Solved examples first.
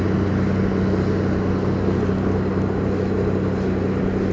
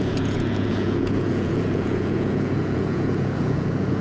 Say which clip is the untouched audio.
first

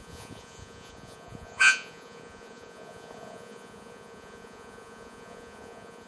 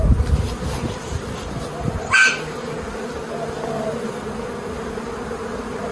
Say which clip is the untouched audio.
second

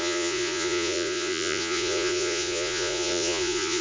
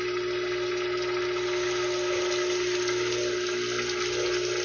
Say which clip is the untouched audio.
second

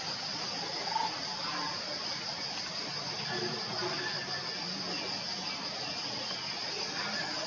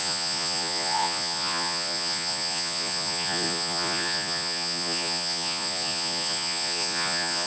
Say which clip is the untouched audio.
first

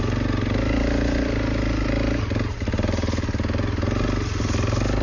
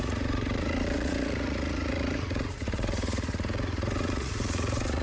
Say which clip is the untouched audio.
first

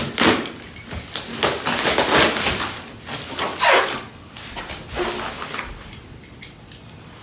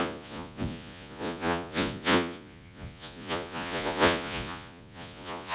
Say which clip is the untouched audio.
first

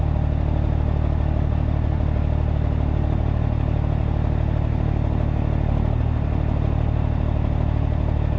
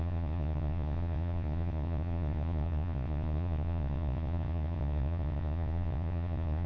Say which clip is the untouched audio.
first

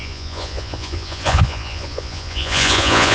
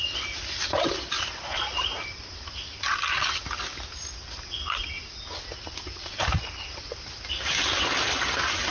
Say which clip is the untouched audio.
second